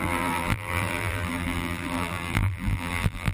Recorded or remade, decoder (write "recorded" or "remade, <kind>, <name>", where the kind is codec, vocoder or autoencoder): remade, vocoder, BigVGAN v2